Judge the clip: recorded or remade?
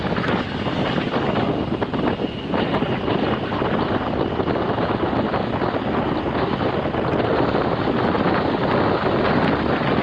recorded